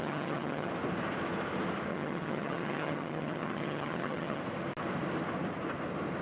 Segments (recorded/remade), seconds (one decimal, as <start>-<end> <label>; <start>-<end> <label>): 0.0-0.7 remade; 0.7-1.9 recorded; 1.9-4.4 remade; 4.4-6.2 recorded